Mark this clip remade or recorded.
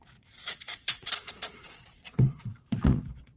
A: remade